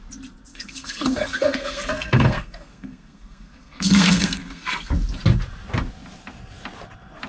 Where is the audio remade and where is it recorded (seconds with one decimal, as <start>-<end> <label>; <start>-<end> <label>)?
0.0-0.5 recorded; 0.5-4.9 remade; 4.9-7.3 recorded